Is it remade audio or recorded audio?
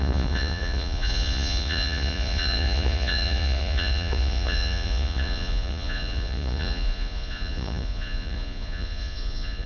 remade